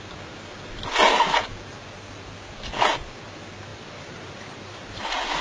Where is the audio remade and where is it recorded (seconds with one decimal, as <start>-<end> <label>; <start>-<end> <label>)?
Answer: 0.0-3.7 recorded; 3.7-5.0 remade; 5.0-5.4 recorded